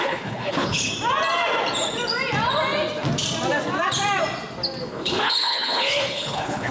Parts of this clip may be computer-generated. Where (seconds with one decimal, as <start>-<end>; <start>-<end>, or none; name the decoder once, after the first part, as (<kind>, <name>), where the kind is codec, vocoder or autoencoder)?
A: 0.0-0.9 (codec, HILCodec); 4.9-6.7